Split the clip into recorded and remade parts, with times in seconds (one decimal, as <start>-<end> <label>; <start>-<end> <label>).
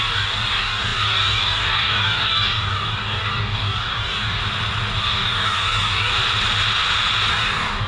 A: 0.0-4.4 remade; 4.4-5.0 recorded; 5.0-6.1 remade; 6.1-7.3 recorded; 7.3-7.9 remade